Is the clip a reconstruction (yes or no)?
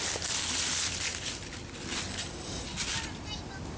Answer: no